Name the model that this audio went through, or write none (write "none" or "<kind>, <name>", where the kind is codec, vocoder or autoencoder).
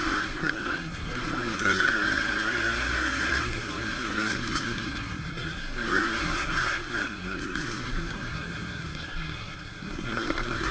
codec, SNAC